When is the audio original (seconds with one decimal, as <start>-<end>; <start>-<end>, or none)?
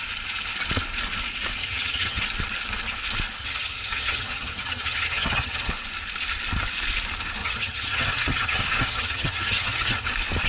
0.0-1.6; 2.2-3.4; 5.7-7.4; 10.1-10.5